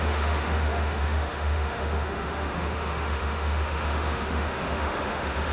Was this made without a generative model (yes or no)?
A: no